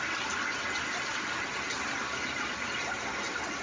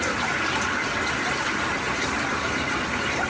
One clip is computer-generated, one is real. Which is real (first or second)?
first